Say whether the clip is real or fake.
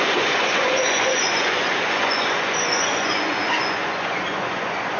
fake